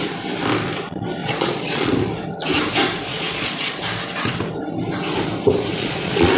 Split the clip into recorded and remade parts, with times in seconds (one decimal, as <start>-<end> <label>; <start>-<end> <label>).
0.0-1.2 recorded; 1.2-1.9 remade; 1.9-3.1 recorded; 3.1-3.8 remade; 3.8-5.7 recorded; 5.7-6.4 remade